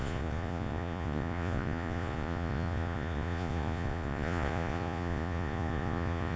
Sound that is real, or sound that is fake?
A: fake